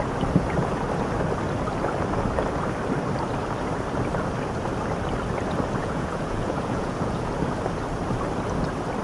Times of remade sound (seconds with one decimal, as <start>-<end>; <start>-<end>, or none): 5.8-7.3